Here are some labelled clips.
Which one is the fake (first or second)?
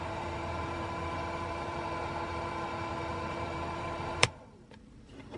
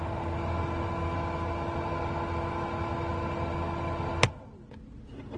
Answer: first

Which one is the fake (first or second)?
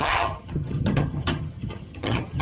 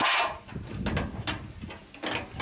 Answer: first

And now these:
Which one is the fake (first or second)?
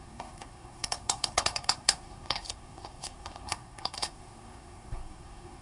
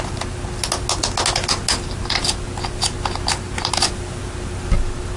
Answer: first